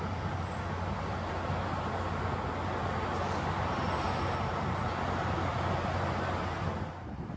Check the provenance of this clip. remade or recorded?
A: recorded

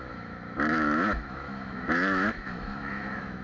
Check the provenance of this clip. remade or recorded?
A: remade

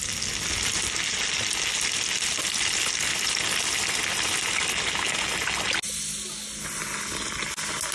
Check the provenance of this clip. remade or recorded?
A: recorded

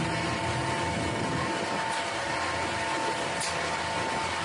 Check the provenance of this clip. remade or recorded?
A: recorded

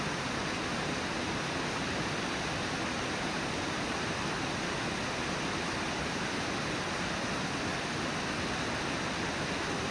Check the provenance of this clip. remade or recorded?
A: recorded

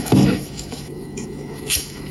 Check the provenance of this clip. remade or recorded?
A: remade